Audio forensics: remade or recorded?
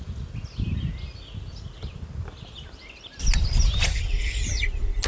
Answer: recorded